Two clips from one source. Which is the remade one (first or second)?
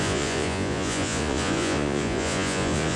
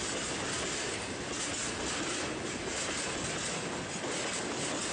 first